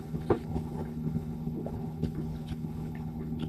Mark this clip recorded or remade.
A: remade